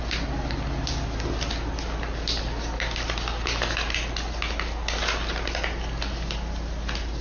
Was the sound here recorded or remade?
recorded